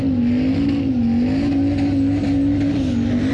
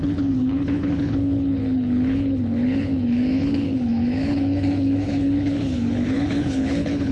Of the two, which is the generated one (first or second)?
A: second